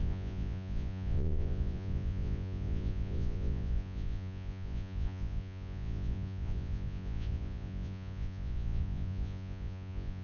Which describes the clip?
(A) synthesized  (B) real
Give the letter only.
A